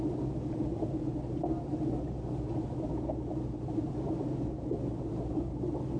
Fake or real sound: real